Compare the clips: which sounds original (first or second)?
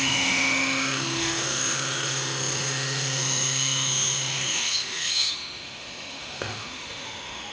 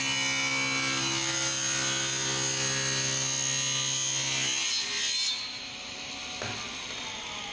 second